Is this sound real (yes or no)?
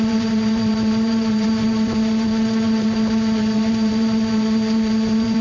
no